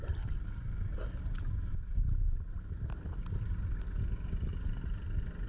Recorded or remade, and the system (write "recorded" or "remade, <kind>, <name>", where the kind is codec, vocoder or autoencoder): recorded